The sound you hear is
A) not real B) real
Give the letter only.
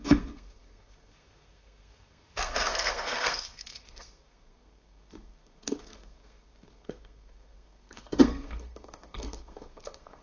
A